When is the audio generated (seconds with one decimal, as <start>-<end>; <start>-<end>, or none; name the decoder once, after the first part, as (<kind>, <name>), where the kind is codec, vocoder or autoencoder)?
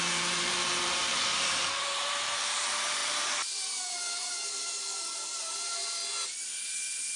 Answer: 0.0-6.0 (vocoder, BigVGAN v2)